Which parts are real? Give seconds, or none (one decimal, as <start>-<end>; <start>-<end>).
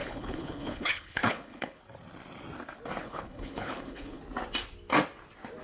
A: 1.8-3.0; 4.2-5.6